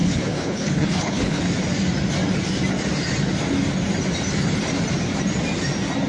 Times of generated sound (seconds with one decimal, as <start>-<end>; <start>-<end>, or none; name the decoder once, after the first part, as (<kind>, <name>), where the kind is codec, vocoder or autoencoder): 0.0-1.4 (codec, HILCodec)